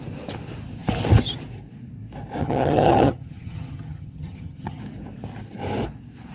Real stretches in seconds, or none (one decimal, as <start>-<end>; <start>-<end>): 0.0-2.4; 4.8-6.3